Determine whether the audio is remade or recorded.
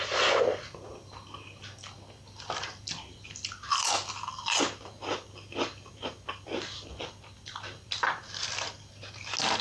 recorded